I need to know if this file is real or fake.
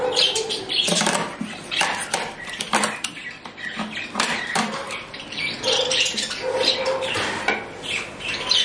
fake